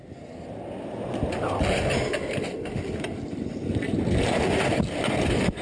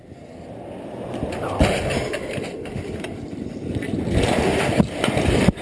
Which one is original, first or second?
first